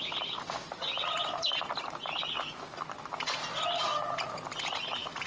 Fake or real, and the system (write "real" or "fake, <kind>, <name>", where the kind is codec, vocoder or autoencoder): real